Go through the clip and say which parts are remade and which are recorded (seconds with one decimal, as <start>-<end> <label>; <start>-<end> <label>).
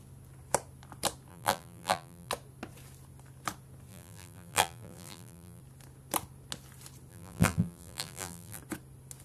0.0-1.3 recorded; 1.3-2.3 remade; 2.3-3.9 recorded; 3.9-5.6 remade; 5.6-7.1 recorded; 7.1-8.6 remade; 8.6-9.2 recorded